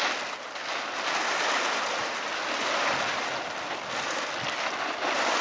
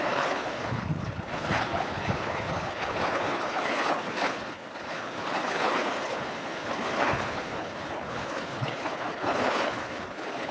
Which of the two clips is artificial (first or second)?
second